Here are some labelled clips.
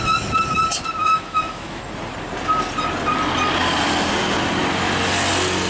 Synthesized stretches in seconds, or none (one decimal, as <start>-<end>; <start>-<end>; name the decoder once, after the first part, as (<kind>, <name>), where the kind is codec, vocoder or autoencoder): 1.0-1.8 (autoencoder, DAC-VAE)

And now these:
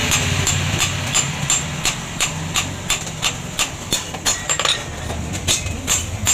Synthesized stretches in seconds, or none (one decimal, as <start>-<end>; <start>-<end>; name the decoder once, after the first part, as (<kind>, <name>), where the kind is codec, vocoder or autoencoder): none

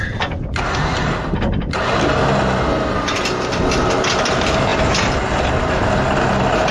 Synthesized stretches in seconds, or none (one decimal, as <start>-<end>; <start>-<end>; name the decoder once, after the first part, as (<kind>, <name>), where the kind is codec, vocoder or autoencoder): none

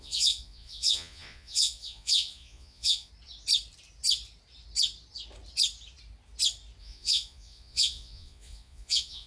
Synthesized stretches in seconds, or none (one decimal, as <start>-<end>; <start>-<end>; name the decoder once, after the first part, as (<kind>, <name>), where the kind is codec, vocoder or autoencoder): 0.0-3.1 (vocoder, Vocos); 6.8-9.3

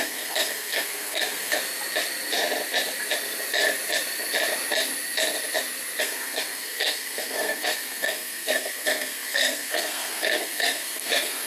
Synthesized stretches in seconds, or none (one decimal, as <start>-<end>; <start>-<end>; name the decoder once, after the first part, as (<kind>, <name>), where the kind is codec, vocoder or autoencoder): 0.0-1.6 (codec, SNAC); 6.0-11.5

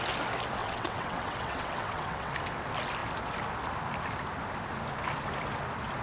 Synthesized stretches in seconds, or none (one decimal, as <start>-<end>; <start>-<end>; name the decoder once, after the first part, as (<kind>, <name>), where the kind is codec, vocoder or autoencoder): 0.6-2.3 (vocoder, WaveNeXt)